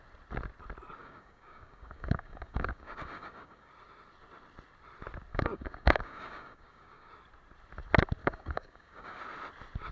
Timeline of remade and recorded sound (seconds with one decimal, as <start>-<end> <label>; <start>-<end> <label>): 0.0-1.0 recorded; 1.0-3.7 remade; 3.7-5.3 recorded; 5.3-7.1 remade; 7.1-8.2 recorded; 8.2-9.2 remade; 9.2-9.9 recorded

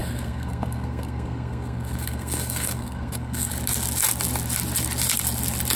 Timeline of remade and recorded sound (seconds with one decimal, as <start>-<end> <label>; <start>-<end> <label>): 0.0-3.5 remade; 3.5-5.8 recorded

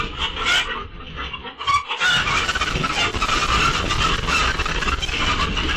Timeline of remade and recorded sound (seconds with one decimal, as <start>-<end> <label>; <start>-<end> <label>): 0.0-5.8 recorded

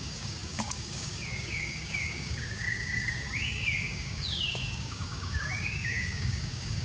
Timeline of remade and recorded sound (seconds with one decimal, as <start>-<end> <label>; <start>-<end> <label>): 0.0-6.8 remade

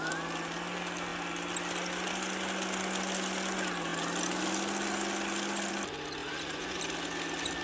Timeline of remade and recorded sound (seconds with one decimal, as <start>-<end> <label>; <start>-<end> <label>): 0.0-6.2 recorded; 6.2-6.8 remade; 6.8-7.6 recorded

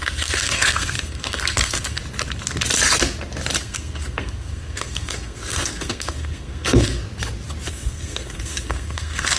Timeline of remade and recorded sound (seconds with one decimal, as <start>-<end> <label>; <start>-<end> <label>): 0.0-2.0 remade; 2.0-3.6 recorded; 3.6-7.0 remade; 7.0-7.7 recorded; 7.7-9.4 remade

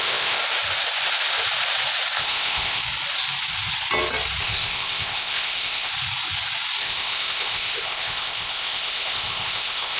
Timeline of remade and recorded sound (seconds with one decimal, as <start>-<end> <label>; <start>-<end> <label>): 0.0-0.4 remade; 0.4-2.2 recorded; 2.2-2.8 remade; 2.8-4.4 recorded; 4.4-5.9 remade; 5.9-6.8 recorded; 6.8-10.0 remade